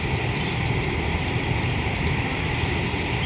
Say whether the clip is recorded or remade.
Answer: recorded